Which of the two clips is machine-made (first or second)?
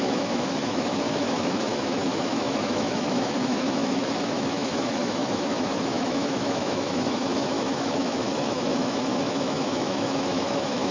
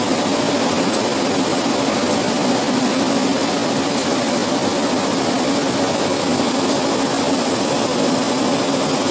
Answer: first